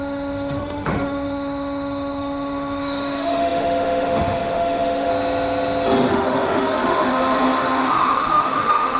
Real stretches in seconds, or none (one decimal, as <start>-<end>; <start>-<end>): 5.1-6.1